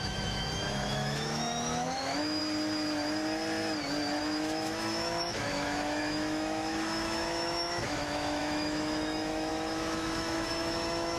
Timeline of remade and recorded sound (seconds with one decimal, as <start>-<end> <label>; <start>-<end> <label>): 0.0-2.4 remade; 2.4-4.2 recorded; 4.2-11.2 remade